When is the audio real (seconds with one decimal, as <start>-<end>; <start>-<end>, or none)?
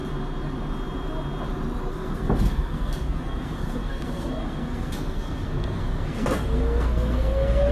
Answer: 0.0-1.9